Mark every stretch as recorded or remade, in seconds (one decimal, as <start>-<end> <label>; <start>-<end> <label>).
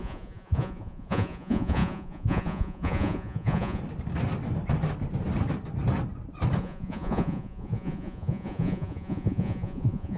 0.0-3.8 remade; 3.8-6.6 recorded; 6.6-10.2 remade